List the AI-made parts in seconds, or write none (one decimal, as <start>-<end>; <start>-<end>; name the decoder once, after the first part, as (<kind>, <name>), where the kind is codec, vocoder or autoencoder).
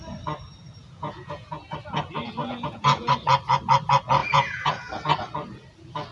0.8-1.6 (vocoder, Vocos); 2.4-3.1; 4.2-4.9